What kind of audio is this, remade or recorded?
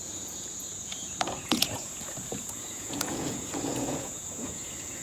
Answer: remade